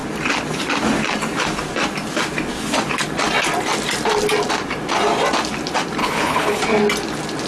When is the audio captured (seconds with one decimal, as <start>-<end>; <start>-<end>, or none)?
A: 0.0-6.0; 6.6-7.5